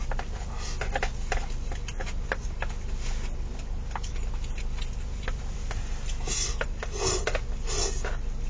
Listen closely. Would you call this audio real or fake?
real